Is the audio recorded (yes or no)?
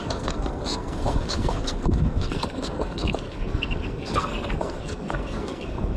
no